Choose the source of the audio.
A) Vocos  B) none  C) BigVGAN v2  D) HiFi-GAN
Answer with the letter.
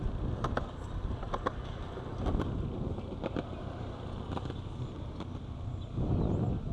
B